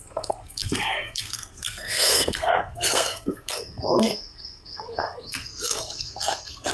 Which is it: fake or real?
fake